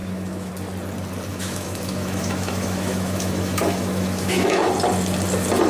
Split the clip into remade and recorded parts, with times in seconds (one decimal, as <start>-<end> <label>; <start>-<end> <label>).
0.0-0.5 remade; 0.5-1.3 recorded; 1.3-4.7 remade; 4.7-5.7 recorded